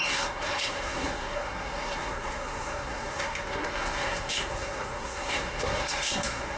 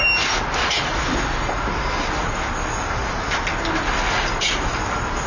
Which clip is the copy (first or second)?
first